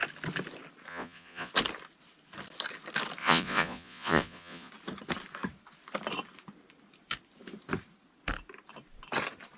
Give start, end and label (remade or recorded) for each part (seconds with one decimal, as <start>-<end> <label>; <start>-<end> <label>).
0.0-0.9 recorded; 0.9-1.5 remade; 1.5-3.2 recorded; 3.2-4.7 remade; 4.7-9.6 recorded